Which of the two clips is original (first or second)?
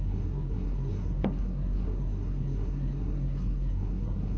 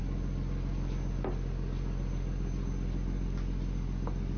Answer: second